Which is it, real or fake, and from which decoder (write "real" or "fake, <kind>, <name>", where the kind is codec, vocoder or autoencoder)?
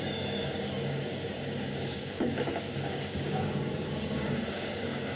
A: fake, codec, DAC